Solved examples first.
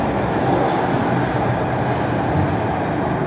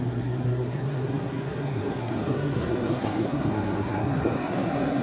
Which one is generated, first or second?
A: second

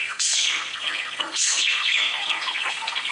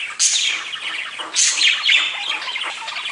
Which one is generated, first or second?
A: first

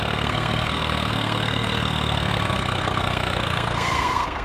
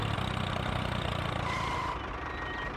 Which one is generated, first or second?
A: first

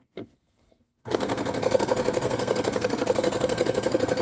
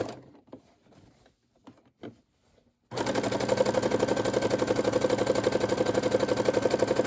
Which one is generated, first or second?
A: first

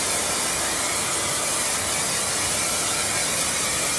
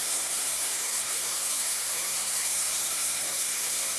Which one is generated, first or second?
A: second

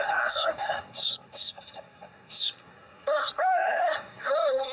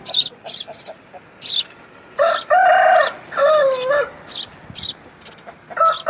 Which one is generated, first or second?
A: first